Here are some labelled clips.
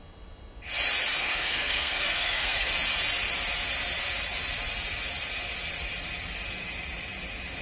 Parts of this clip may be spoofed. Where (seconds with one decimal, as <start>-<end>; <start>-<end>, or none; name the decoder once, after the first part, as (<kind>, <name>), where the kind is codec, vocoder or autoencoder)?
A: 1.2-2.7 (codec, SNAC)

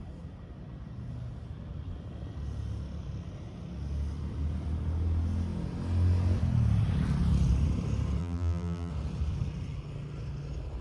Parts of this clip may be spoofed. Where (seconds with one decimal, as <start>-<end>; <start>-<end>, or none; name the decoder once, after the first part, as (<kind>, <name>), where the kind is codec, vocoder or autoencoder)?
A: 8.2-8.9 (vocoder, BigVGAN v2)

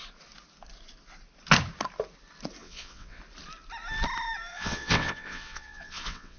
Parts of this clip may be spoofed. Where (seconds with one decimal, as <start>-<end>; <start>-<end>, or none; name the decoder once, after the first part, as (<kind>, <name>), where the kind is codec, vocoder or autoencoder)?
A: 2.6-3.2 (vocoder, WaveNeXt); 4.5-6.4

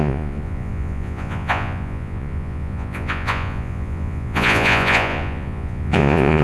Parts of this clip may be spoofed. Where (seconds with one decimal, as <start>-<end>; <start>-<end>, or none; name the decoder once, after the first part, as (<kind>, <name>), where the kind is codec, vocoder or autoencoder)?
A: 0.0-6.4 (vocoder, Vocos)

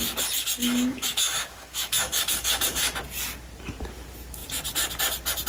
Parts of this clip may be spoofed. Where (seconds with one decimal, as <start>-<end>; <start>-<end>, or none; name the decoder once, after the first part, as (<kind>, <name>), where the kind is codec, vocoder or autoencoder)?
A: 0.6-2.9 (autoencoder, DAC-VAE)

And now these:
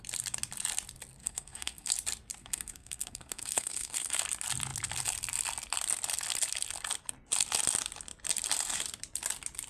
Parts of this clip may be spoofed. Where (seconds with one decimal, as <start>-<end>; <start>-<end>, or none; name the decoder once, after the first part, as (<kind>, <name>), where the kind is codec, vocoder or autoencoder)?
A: 1.2-1.9 (codec, SNAC); 2.4-4.2